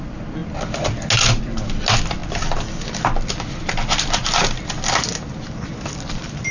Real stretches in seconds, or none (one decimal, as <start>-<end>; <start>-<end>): 0.0-6.5